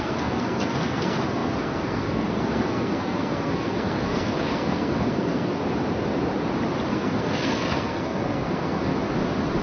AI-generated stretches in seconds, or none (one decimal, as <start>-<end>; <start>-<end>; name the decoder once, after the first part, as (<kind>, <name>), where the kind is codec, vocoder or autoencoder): 0.0-5.6 (codec, SNAC); 6.9-8.9